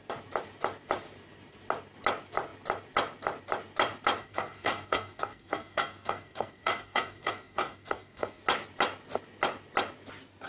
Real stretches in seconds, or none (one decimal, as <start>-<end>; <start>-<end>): 0.0-4.2; 8.4-10.5